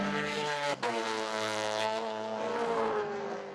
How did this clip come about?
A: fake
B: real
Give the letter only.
A